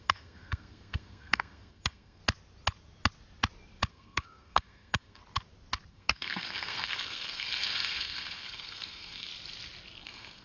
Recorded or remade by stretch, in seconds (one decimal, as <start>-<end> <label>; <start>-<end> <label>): 0.0-2.2 remade; 2.2-3.9 recorded; 3.9-5.2 remade; 5.2-5.9 recorded; 5.9-9.3 remade; 9.3-10.0 recorded; 10.0-10.4 remade